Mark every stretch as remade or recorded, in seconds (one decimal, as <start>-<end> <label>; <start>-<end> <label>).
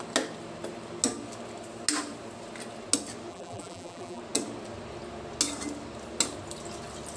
0.0-3.3 recorded; 3.3-4.2 remade; 4.2-7.2 recorded